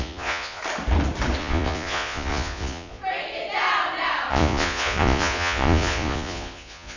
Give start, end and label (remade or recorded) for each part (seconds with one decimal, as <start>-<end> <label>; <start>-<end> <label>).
0.0-0.6 remade; 0.6-1.4 recorded; 1.4-3.0 remade; 3.0-4.3 recorded; 4.3-7.0 remade